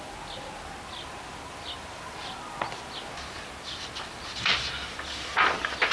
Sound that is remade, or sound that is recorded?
recorded